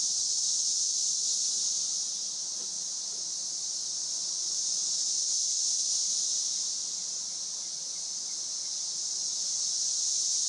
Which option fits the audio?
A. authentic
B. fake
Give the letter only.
A